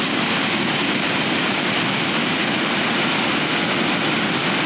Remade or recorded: recorded